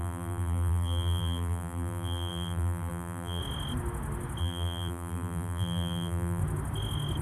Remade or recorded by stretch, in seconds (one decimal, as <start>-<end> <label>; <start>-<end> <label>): 0.0-3.4 remade; 3.4-4.4 recorded; 4.4-6.4 remade; 6.4-7.2 recorded